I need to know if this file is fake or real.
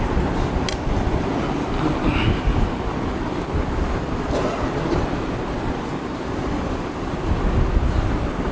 real